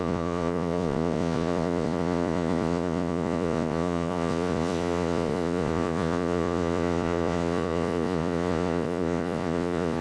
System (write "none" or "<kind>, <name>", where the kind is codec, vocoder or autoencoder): vocoder, Vocos